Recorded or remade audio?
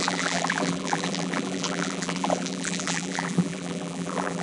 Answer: remade